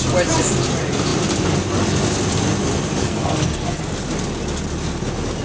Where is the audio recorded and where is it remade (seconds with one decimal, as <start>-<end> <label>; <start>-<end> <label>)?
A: 0.0-3.0 recorded; 3.0-3.8 remade; 3.8-5.4 recorded